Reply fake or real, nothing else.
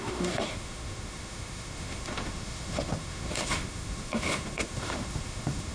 fake